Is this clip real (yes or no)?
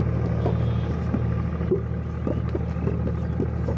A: yes